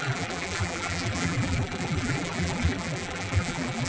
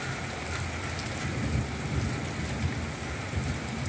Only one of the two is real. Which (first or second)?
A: second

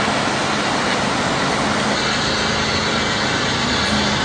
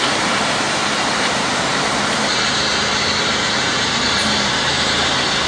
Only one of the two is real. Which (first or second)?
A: first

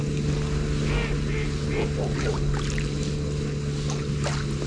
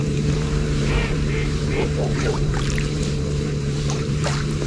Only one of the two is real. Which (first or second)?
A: first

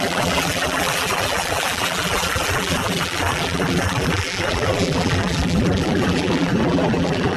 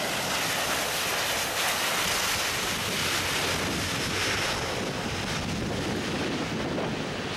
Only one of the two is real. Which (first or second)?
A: second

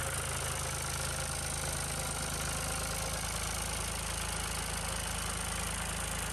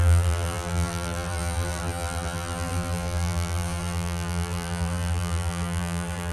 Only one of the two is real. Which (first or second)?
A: first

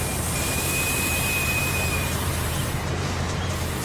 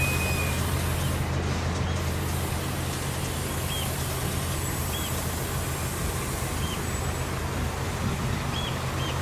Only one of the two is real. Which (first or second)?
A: second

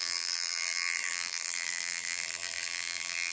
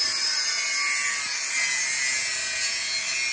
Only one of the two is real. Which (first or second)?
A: second